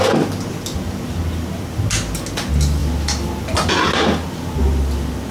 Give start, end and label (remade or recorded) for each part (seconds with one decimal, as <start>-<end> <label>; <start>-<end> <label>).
0.0-5.3 recorded